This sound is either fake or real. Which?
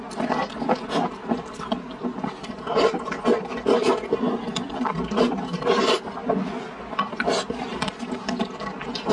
real